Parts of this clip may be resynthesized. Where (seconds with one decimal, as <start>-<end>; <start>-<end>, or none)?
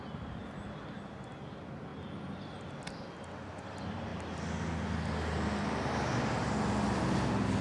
none